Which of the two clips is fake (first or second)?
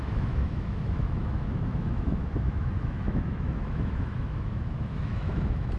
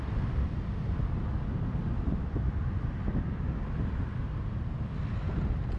first